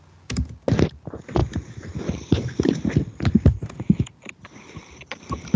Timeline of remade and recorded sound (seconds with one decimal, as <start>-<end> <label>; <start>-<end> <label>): 0.0-1.4 recorded; 1.4-4.8 remade; 4.8-5.6 recorded

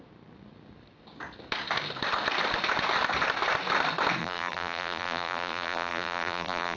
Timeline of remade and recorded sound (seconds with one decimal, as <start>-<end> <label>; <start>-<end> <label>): 0.0-4.2 recorded; 4.2-6.8 remade

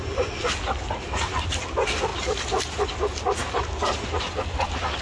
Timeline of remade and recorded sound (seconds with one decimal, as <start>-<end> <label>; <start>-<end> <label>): 0.0-5.0 recorded

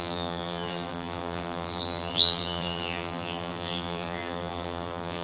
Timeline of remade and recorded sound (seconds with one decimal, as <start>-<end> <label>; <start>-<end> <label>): 0.0-5.2 remade